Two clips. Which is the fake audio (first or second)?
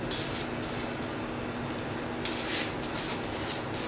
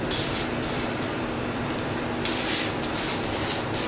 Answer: second